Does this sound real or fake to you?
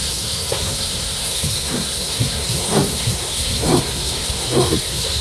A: fake